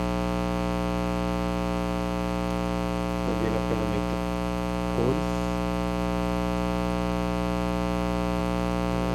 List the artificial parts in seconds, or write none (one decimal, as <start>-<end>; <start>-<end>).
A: none